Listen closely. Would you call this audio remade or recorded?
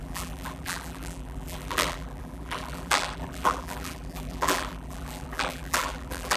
remade